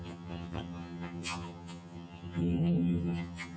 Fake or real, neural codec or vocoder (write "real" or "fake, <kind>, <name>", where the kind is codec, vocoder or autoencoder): fake, vocoder, HiFi-GAN